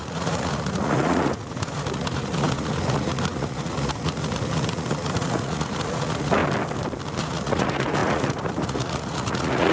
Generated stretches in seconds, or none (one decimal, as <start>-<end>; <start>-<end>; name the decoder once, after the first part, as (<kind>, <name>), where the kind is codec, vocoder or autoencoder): 0.0-6.4 (vocoder, Vocos); 7.2-9.7